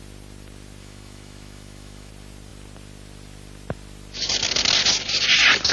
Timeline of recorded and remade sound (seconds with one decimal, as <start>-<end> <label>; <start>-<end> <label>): 0.0-0.8 recorded; 0.8-2.1 remade; 2.1-5.7 recorded